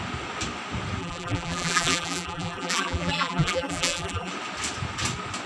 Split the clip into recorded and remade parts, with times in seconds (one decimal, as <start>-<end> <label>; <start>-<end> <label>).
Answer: 0.0-1.0 recorded; 1.0-4.3 remade; 4.3-5.5 recorded